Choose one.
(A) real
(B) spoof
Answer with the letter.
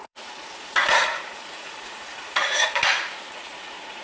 B